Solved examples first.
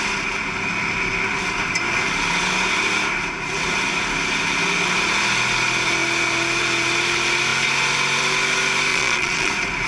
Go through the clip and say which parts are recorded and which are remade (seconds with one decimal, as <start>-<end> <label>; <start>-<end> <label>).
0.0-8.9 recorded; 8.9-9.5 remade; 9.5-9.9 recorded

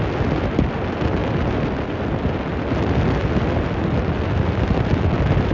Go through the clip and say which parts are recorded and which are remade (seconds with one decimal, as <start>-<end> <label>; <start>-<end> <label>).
0.0-5.5 recorded

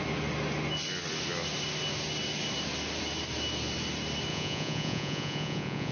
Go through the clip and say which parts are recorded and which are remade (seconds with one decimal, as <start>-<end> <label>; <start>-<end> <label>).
0.0-4.3 recorded; 4.3-5.9 remade

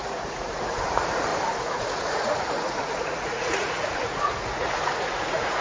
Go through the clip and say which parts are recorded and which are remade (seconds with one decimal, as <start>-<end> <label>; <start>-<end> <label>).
0.0-5.6 remade

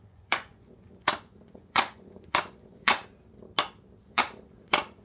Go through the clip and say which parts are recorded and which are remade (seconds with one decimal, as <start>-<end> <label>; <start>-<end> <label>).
0.0-3.0 remade; 3.0-4.0 recorded; 4.0-5.0 remade

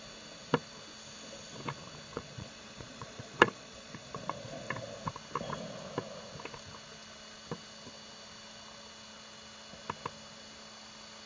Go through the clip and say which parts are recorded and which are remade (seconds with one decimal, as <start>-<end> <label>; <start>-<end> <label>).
0.0-2.1 recorded; 2.1-4.6 remade; 4.6-11.3 recorded